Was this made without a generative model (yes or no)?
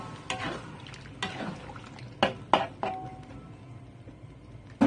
yes